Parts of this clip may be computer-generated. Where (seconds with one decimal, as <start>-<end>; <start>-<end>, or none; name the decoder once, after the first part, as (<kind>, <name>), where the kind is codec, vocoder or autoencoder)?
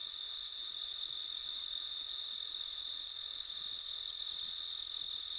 0.0-2.6 (vocoder, BigVGAN v2)